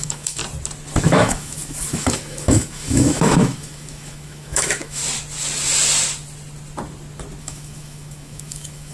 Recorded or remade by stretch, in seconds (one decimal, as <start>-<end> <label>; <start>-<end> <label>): 0.0-0.4 remade; 0.4-1.0 recorded; 1.0-5.0 remade; 5.0-7.4 recorded; 7.4-8.9 remade